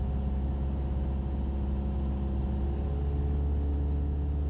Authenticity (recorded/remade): recorded